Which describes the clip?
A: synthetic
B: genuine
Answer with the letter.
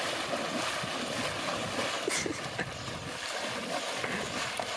B